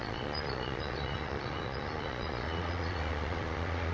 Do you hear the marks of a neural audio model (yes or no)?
yes